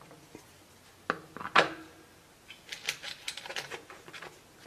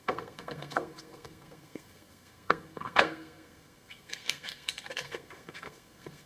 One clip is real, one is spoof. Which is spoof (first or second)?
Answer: second